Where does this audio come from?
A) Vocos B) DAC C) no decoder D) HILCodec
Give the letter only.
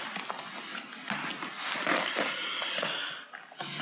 C